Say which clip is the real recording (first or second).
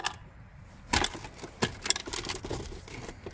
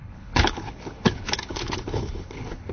first